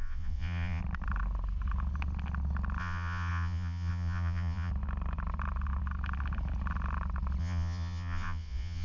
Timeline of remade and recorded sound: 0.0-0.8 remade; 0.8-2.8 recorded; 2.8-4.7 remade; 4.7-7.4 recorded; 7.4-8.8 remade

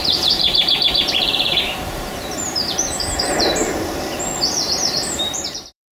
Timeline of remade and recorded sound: 0.0-3.7 remade; 3.7-4.9 recorded; 4.9-5.9 remade

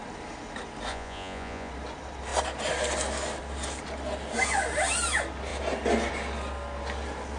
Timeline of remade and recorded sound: 0.0-0.9 recorded; 0.9-1.7 remade; 1.7-7.4 recorded

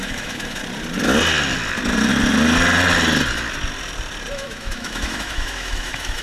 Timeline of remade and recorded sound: 0.0-0.6 remade; 0.6-4.3 recorded; 4.3-6.2 remade

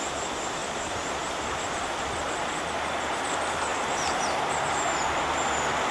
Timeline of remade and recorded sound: 0.0-0.6 recorded; 0.6-1.8 remade; 1.8-3.7 recorded; 3.7-5.2 remade; 5.2-5.9 recorded

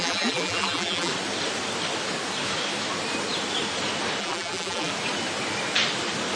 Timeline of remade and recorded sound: 0.0-1.1 remade; 1.1-4.2 recorded; 4.2-4.9 remade; 4.9-6.4 recorded

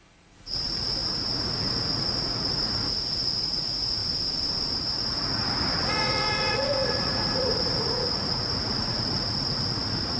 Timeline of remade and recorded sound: 0.0-4.0 remade; 4.0-4.8 recorded; 4.8-10.2 remade